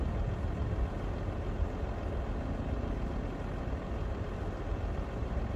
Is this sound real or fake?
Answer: real